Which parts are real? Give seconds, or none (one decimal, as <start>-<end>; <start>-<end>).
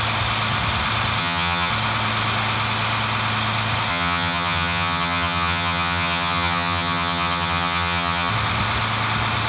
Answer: 0.0-1.2; 1.7-3.9; 8.3-9.5